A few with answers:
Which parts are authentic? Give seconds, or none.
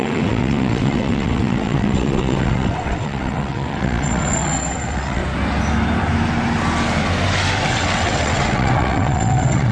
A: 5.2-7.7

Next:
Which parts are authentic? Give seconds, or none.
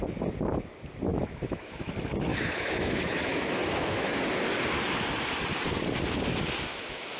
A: 0.0-1.1; 1.9-2.3; 4.2-6.7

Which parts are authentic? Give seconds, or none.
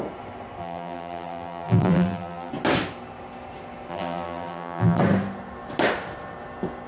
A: 0.0-0.6; 2.5-3.9; 5.0-6.9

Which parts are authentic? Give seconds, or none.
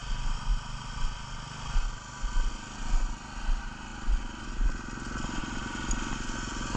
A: 0.0-6.8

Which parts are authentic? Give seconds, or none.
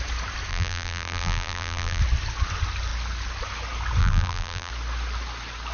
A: 0.0-0.5; 2.0-4.0; 4.7-5.7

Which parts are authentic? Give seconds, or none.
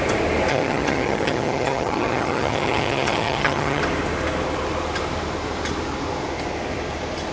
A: 0.0-0.5; 3.8-7.3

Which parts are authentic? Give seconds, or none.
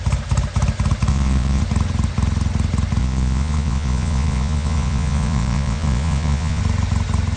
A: 0.0-1.1; 1.6-3.0; 6.6-7.4